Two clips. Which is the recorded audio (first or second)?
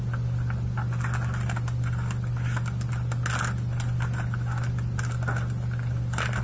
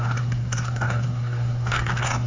first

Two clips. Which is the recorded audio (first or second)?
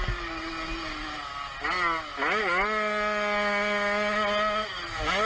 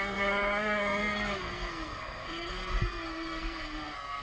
first